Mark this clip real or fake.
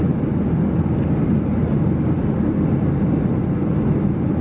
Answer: real